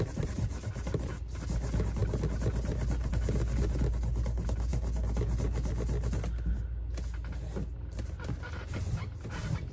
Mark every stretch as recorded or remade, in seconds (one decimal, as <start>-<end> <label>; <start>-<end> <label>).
0.0-9.7 recorded